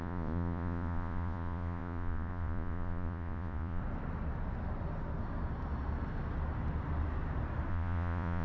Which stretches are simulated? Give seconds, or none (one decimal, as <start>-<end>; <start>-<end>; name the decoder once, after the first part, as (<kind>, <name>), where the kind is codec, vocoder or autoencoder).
0.0-3.8 (vocoder, Vocos); 7.7-8.4